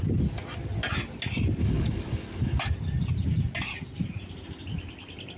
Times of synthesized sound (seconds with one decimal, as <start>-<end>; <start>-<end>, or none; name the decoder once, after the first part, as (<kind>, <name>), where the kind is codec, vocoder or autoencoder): 1.6-2.6 (codec, DAC)